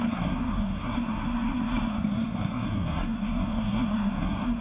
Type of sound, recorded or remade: remade